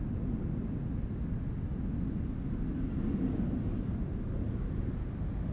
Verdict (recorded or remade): recorded